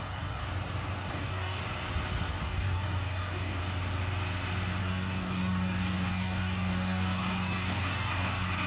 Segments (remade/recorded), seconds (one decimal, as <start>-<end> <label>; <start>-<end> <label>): 0.0-0.4 remade; 0.4-1.1 recorded; 1.1-1.6 remade; 1.6-2.3 recorded; 2.3-3.6 remade; 3.6-4.8 recorded; 4.8-8.7 remade